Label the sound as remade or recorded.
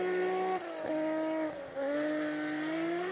recorded